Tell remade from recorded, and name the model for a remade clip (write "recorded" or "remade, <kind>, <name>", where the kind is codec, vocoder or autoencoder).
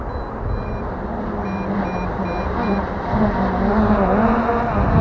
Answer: recorded